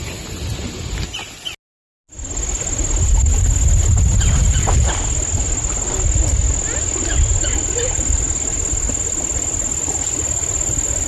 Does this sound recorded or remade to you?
recorded